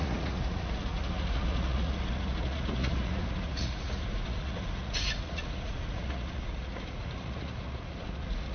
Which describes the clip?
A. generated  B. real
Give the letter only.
A